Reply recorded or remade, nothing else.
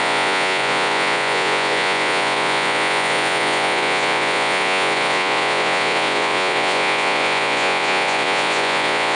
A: remade